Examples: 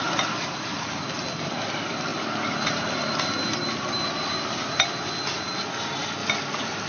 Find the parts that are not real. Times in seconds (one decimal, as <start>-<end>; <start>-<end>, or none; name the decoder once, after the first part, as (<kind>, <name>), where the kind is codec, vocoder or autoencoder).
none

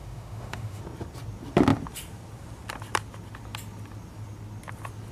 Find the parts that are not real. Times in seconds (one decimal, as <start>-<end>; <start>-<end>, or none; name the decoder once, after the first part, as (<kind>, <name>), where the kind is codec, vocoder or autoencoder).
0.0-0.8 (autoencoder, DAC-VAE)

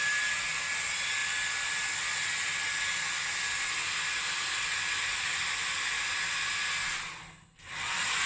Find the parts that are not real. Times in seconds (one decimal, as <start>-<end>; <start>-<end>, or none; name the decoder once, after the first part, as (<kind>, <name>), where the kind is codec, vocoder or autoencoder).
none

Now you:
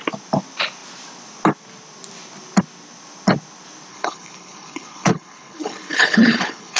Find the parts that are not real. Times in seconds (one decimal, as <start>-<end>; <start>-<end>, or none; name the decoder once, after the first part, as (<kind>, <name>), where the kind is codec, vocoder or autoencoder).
3.9-6.8 (codec, HILCodec)